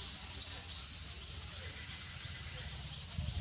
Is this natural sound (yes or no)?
yes